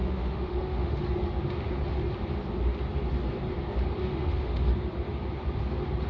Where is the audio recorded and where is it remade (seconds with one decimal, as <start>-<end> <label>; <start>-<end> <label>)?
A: 0.0-1.0 remade; 1.0-4.0 recorded; 4.0-4.6 remade; 4.6-6.1 recorded

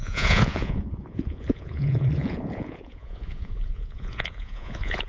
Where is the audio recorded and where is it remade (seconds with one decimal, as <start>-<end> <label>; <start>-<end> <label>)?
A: 0.0-5.1 remade

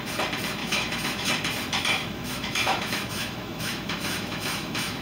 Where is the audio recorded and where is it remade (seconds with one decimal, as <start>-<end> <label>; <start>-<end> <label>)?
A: 0.0-0.6 recorded; 0.6-1.3 remade; 1.3-2.0 recorded; 2.0-5.0 remade

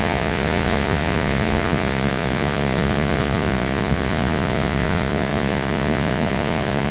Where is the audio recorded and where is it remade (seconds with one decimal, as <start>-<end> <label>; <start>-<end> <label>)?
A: 0.0-6.9 remade

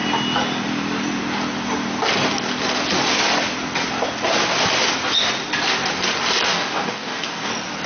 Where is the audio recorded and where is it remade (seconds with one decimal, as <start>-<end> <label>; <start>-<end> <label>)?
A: 0.0-6.5 recorded; 6.5-7.5 remade; 7.5-7.9 recorded

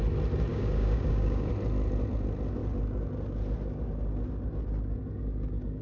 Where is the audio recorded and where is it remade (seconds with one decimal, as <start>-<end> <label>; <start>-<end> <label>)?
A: 0.0-0.5 recorded; 0.5-1.5 remade; 1.5-5.8 recorded

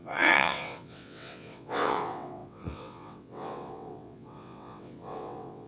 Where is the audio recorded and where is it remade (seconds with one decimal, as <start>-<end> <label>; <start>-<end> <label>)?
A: 0.0-5.7 remade